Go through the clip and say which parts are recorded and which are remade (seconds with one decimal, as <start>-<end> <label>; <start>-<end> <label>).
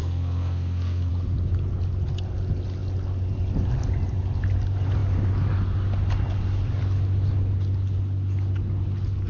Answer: 0.0-1.1 remade; 1.1-9.3 recorded